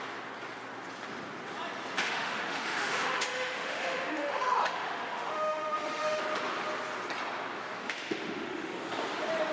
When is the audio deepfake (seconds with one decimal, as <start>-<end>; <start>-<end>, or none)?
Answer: 2.0-6.2; 7.8-8.7